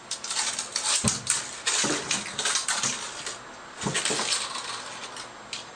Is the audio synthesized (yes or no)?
no